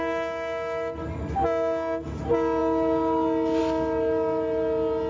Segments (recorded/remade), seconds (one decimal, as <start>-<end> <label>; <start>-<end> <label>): 0.0-5.1 recorded

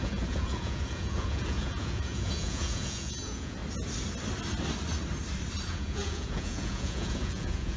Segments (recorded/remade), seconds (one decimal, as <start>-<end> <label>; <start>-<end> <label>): 0.0-3.6 remade; 3.6-5.7 recorded; 5.7-7.8 remade